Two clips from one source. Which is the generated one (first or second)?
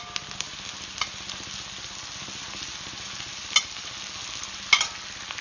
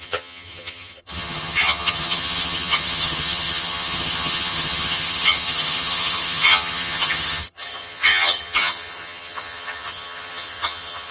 second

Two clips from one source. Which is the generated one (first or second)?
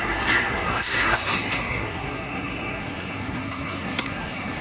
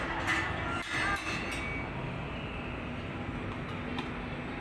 first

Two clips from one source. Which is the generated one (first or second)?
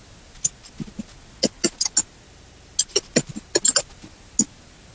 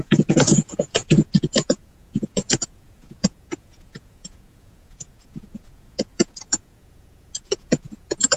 second